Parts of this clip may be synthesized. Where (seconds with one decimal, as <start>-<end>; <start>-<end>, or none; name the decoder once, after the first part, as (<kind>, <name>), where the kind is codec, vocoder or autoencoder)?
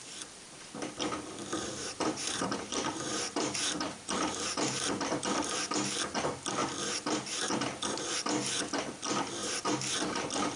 1.4-5.2 (vocoder, BigVGAN v2); 9.4-10.2